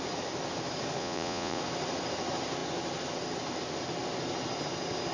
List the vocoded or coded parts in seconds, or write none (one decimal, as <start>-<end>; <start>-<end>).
1.0-1.6